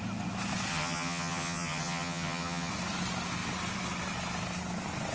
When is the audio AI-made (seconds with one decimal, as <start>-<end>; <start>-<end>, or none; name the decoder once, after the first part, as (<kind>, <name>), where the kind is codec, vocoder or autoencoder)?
0.7-2.7 (vocoder, HiFi-GAN)

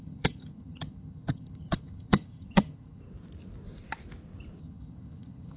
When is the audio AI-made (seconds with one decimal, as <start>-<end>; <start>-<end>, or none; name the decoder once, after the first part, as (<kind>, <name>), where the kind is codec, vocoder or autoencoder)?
0.0-3.0 (vocoder, HiFi-GAN); 4.6-5.6

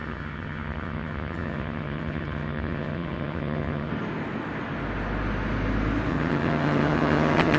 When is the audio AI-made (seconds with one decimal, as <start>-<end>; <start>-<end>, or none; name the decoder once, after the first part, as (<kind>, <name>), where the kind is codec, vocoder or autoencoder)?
0.0-3.9 (vocoder, HiFi-GAN); 6.1-7.6

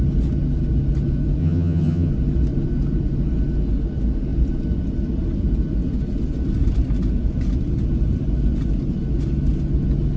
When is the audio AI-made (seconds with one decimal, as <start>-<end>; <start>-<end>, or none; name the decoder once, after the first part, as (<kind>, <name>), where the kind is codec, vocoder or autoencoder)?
1.4-2.1 (vocoder, HiFi-GAN)

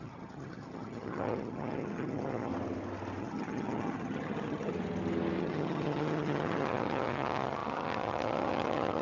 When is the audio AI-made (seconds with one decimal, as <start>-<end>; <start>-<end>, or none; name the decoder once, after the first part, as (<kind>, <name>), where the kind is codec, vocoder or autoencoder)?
0.0-2.5 (vocoder, HiFi-GAN); 3.2-4.7; 5.4-9.0

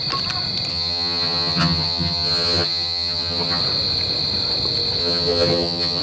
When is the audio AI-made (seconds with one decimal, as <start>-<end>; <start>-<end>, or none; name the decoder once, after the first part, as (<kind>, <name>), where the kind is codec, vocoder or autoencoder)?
0.7-3.6 (vocoder, HiFi-GAN); 5.0-6.0

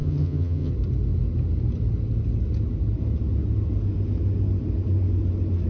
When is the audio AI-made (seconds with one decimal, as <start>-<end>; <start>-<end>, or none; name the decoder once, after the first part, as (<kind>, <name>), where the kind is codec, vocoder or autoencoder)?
0.0-0.7 (vocoder, HiFi-GAN)